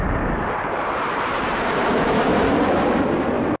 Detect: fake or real fake